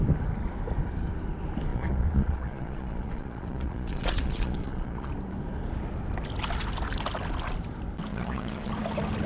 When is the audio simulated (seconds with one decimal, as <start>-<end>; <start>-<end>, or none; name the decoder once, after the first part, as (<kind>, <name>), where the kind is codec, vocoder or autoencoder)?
1.7-5.1 (vocoder, Vocos); 8.1-8.7